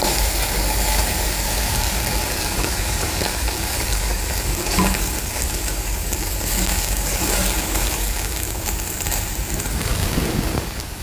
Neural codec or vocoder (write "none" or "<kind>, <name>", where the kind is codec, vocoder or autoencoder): codec, DAC